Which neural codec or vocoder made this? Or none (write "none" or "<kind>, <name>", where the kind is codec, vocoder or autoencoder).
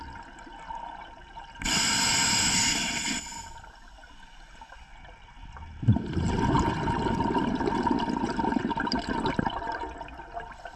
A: none